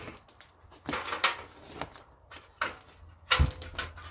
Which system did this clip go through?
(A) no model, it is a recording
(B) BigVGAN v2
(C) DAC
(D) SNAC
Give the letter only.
A